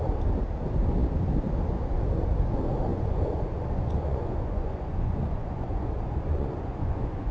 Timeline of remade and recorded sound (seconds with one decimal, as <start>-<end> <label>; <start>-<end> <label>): 0.0-2.9 recorded; 2.9-7.3 remade

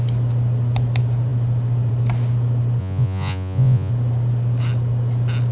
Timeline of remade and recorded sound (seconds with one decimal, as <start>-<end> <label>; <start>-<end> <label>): 0.0-2.8 recorded; 2.8-3.9 remade; 3.9-5.5 recorded

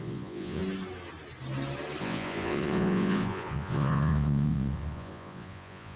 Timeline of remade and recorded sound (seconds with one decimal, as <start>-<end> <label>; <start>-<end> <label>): 0.0-0.6 remade; 0.6-2.0 recorded; 2.0-6.0 remade

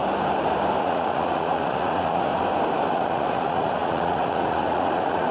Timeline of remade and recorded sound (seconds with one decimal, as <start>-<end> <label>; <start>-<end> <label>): 0.0-0.8 recorded; 0.8-2.3 remade; 2.3-2.9 recorded; 2.9-5.3 remade